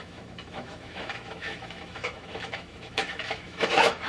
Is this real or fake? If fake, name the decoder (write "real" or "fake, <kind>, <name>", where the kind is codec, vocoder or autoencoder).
fake, autoencoder, DAC-VAE